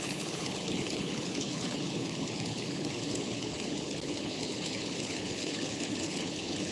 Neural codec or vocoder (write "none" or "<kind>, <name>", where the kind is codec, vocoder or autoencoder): codec, HILCodec